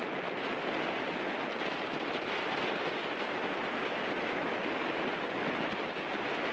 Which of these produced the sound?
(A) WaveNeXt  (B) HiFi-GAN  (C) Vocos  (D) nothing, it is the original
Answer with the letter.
D